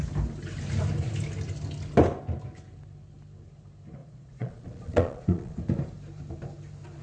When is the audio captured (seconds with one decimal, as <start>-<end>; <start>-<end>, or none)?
0.0-4.0; 5.6-7.0